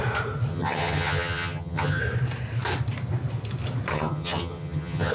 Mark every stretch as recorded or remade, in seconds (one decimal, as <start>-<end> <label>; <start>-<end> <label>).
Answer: 0.0-0.5 recorded; 0.5-2.0 remade; 2.0-3.9 recorded; 3.9-5.1 remade